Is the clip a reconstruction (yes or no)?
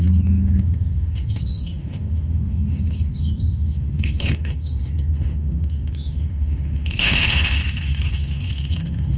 yes